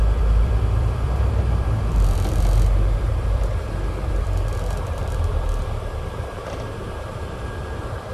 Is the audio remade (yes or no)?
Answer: yes